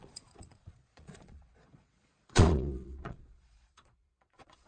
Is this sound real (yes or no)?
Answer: no